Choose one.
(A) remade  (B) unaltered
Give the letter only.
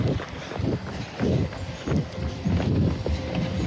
B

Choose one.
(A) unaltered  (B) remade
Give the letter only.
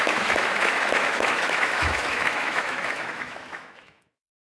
B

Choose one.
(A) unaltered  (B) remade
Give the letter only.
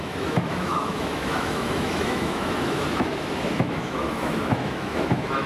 B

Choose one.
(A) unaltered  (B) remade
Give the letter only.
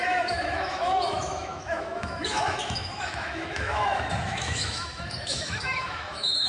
B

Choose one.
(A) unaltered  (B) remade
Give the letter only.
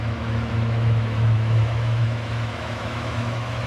B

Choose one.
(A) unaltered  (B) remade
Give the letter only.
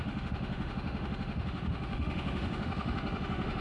B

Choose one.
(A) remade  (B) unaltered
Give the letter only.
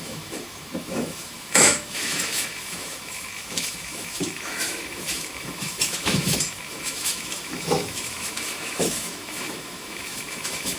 A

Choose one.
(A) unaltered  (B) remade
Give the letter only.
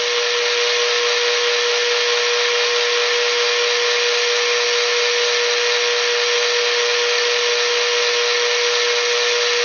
A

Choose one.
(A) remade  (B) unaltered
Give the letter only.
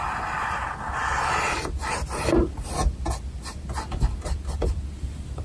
B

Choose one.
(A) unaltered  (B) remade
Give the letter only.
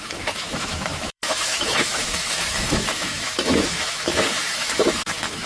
B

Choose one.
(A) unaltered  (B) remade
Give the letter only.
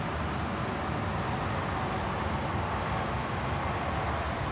A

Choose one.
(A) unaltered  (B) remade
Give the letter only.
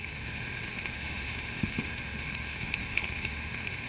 B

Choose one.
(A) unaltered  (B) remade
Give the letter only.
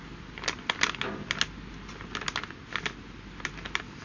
A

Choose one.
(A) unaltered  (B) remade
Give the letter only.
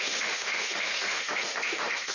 B